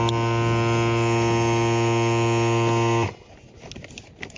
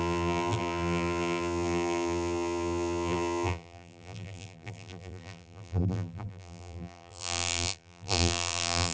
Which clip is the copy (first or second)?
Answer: second